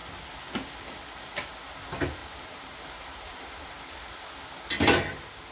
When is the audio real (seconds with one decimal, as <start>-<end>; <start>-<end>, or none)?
0.0-2.2; 3.7-5.5